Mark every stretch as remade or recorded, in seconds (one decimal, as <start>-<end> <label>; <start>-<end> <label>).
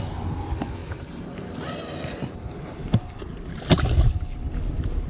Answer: 0.0-0.8 recorded; 0.8-3.5 remade; 3.5-5.1 recorded